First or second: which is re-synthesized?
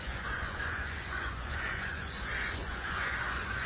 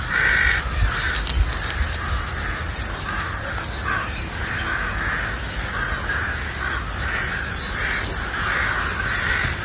first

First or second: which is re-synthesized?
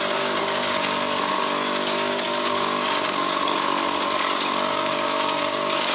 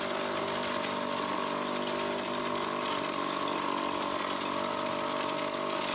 first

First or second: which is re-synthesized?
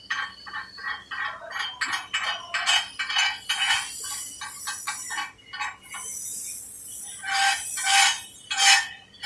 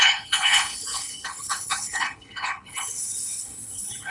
second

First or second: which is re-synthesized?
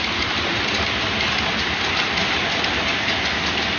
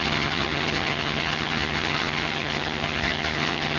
second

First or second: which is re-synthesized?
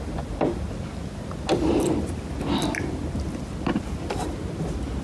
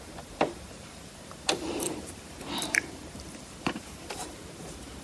second